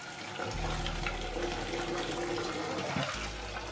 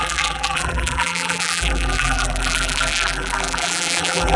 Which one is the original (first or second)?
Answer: first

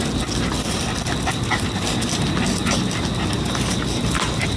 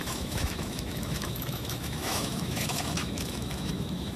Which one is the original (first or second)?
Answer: first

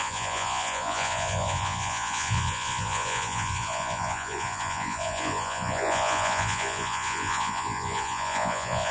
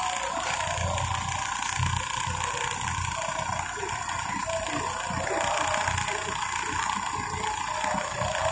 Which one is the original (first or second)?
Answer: second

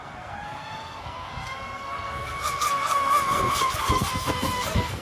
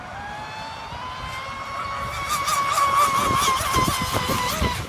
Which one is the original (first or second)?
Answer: second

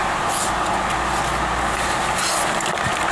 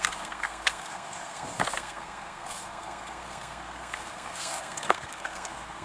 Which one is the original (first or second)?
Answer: first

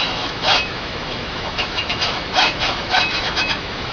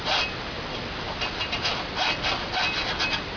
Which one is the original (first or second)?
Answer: second